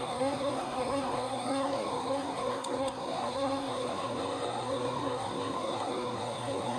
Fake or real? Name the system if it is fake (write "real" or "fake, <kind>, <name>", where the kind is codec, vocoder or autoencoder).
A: fake, codec, SNAC